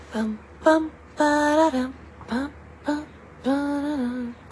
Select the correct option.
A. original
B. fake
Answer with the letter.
A